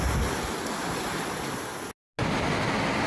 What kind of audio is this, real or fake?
real